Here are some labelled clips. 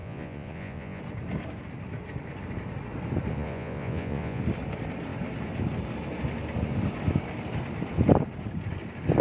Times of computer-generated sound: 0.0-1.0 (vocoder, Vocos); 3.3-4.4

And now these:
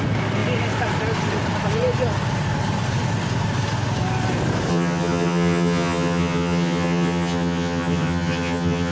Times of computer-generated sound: 4.7-8.9 (vocoder, HiFi-GAN)

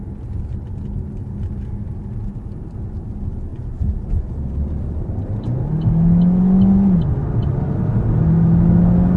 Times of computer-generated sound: 3.5-5.7 (vocoder, BigVGAN v2); 7.2-8.1

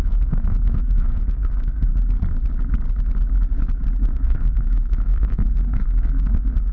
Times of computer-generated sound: 0.0-1.9 (codec, SNAC); 4.0-6.7

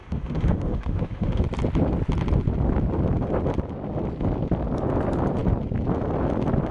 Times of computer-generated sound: 0.0-1.4 (autoencoder, DAC-VAE)

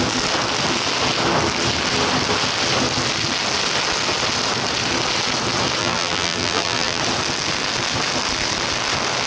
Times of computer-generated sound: 5.8-7.0 (vocoder, BigVGAN v2)

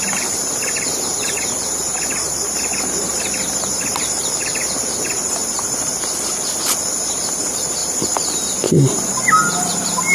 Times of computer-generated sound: 0.0-10.1 (vocoder, BigVGAN v2)

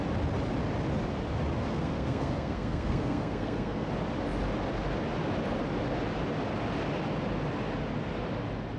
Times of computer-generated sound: 1.7-3.9 (codec, SNAC)